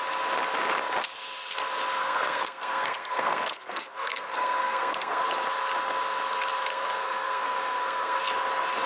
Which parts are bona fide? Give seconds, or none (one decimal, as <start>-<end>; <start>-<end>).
0.0-2.0; 5.2-6.7; 8.2-8.9